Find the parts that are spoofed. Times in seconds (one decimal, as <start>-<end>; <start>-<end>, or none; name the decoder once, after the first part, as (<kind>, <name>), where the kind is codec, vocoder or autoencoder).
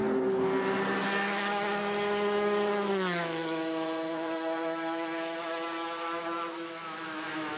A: 1.0-7.6 (autoencoder, DAC-VAE)